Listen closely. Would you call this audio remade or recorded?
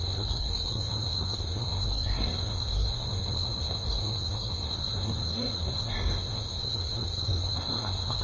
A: remade